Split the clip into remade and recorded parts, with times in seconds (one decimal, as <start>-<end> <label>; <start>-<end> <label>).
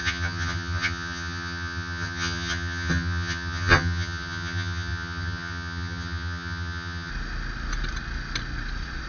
0.0-7.1 remade; 7.1-9.1 recorded